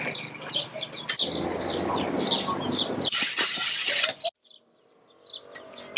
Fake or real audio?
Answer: real